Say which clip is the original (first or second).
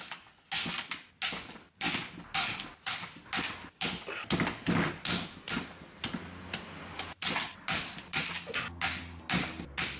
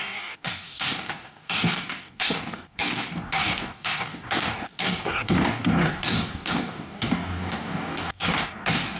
first